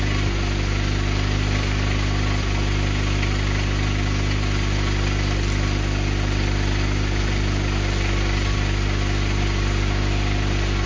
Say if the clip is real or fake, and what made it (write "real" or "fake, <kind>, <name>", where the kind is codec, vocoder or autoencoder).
real